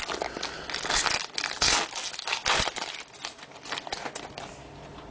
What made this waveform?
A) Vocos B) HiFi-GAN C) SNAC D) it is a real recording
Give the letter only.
D